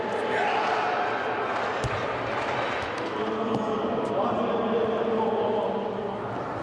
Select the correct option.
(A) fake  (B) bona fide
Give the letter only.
B